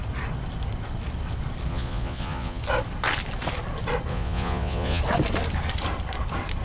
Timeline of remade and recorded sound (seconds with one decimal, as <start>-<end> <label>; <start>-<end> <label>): 0.0-1.7 recorded; 1.7-2.6 remade; 2.6-4.1 recorded; 4.1-5.0 remade; 5.0-6.6 recorded